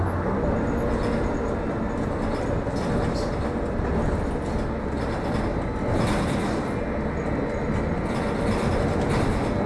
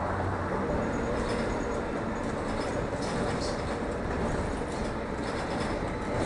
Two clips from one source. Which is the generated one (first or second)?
second